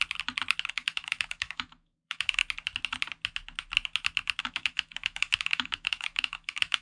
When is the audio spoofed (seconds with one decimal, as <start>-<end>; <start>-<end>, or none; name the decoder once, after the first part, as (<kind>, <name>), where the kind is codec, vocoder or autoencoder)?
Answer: 0.7-2.4 (autoencoder, DAC-VAE); 4.4-6.8